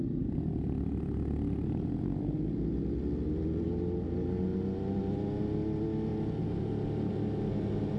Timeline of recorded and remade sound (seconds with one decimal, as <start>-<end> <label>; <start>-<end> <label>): 0.0-8.0 recorded